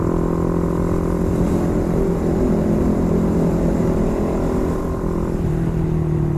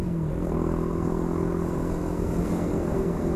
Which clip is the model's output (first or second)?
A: second